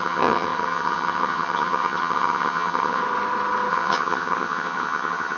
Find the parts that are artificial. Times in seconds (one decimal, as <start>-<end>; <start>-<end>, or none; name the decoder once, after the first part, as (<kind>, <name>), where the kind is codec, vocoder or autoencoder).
0.0-3.0 (vocoder, HiFi-GAN); 3.7-5.4